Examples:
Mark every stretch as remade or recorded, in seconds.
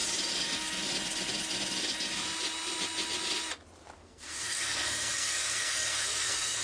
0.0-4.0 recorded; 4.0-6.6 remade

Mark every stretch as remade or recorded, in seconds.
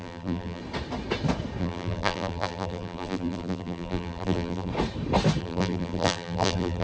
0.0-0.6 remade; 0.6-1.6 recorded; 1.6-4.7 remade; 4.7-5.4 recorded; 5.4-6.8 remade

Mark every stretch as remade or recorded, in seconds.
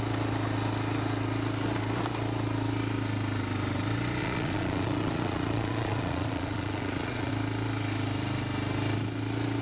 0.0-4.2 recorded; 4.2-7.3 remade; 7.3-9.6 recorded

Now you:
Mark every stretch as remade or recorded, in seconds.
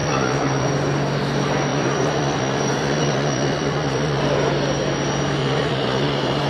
0.0-0.7 remade; 0.7-1.7 recorded; 1.7-4.2 remade; 4.2-5.4 recorded; 5.4-6.5 remade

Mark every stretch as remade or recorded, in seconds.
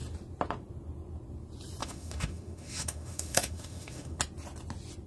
0.0-1.8 recorded; 1.8-4.2 remade; 4.2-5.1 recorded